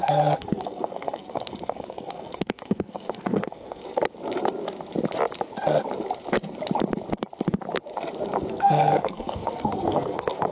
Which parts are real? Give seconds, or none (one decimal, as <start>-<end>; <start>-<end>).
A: 3.8-8.5